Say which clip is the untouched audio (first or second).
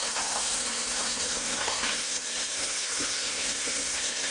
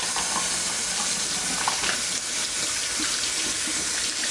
second